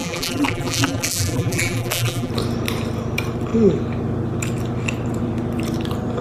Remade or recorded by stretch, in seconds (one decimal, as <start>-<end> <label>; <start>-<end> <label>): 0.0-2.3 remade; 2.3-6.2 recorded